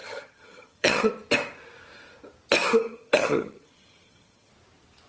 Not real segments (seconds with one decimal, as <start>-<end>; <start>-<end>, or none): 0.0-1.1; 2.6-4.5